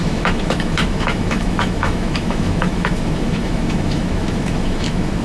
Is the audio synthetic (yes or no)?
yes